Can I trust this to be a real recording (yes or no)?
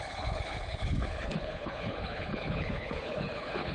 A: no